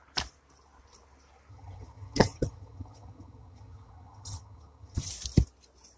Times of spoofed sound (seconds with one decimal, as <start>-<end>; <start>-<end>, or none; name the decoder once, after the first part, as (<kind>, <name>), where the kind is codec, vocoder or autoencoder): 1.5-5.1 (vocoder, HiFi-GAN)